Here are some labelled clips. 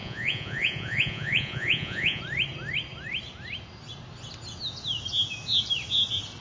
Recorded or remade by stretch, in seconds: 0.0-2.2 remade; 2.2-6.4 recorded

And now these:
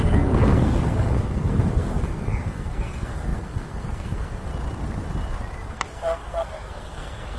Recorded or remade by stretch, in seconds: 0.0-4.5 remade; 4.5-5.7 recorded; 5.7-7.4 remade